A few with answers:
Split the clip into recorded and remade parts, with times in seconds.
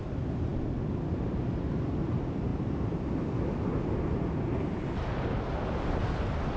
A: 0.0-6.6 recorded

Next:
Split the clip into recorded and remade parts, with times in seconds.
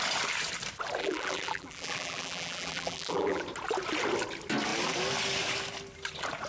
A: 0.0-1.0 recorded; 1.0-3.4 remade; 3.4-6.5 recorded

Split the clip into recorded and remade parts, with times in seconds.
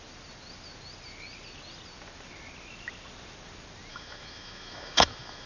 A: 0.0-3.9 recorded; 3.9-5.5 remade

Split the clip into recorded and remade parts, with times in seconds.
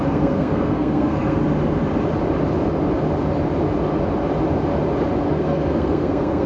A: 0.0-1.4 remade; 1.4-5.3 recorded; 5.3-6.5 remade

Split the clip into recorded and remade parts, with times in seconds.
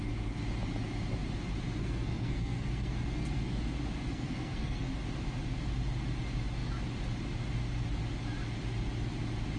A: 0.0-1.8 recorded; 1.8-3.6 remade; 3.6-4.1 recorded; 4.1-4.9 remade; 4.9-9.6 recorded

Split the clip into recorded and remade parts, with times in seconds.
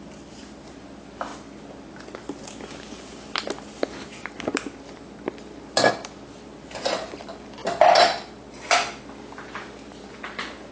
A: 0.0-10.7 recorded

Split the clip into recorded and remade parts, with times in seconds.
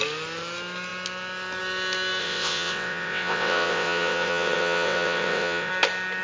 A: 0.0-2.2 recorded; 2.2-5.7 remade; 5.7-6.2 recorded